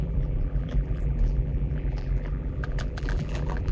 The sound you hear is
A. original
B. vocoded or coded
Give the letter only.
B